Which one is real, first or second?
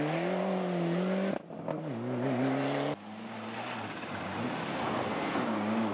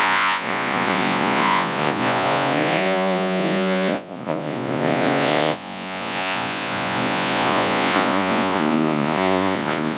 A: first